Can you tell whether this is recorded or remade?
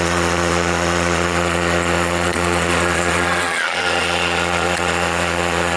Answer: remade